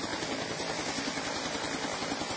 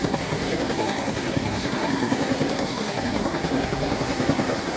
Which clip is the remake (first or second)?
second